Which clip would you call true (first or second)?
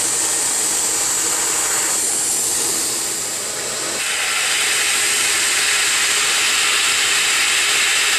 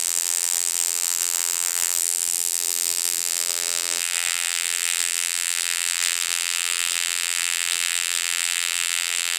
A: first